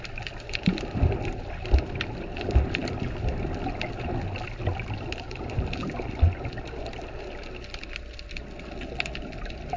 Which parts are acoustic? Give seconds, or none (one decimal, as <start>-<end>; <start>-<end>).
0.0-9.8